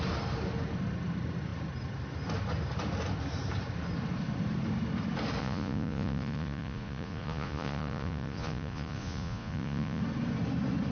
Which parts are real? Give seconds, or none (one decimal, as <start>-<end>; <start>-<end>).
0.0-5.4; 10.0-10.9

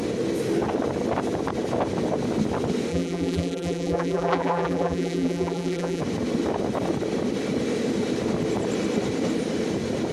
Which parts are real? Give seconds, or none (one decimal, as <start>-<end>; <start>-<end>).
0.0-2.9; 6.0-10.1

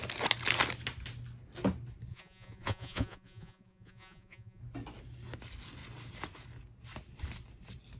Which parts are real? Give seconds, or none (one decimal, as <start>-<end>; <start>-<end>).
0.0-2.1; 4.6-8.0

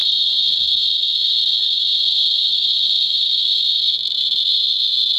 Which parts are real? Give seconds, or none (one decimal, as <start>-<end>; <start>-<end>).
0.0-2.4; 4.7-5.2

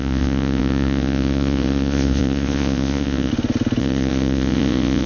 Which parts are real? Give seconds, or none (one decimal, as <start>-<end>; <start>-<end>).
3.3-3.8